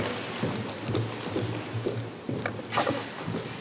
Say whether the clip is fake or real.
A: real